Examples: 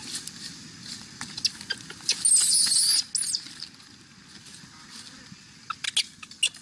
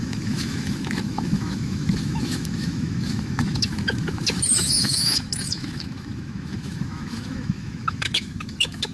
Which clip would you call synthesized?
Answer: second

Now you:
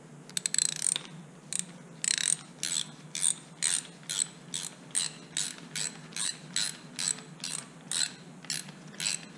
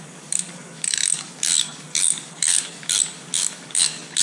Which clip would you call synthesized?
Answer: second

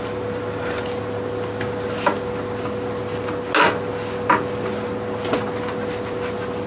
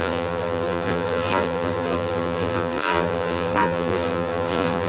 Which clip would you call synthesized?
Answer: second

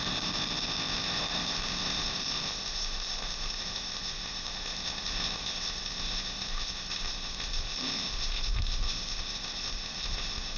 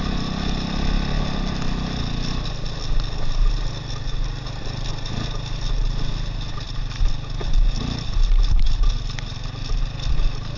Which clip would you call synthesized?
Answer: first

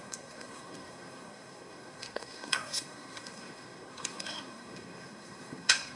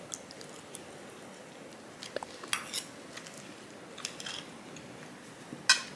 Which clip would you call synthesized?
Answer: first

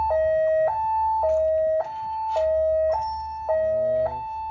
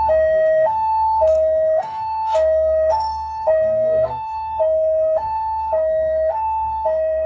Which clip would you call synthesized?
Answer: second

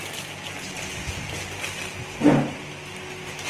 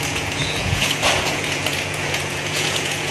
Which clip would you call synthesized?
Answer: second